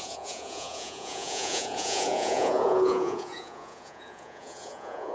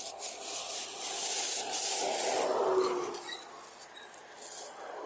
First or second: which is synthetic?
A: first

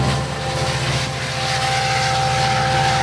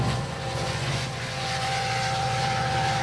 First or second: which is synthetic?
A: second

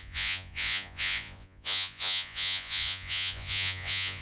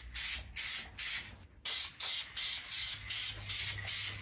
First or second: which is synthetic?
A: first